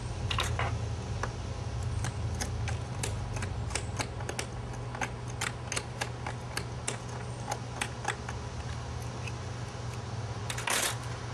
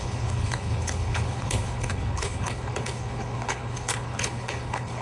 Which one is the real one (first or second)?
first